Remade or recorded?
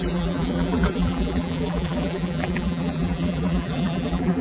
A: remade